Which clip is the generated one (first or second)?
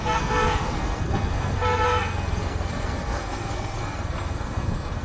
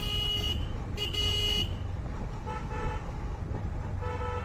first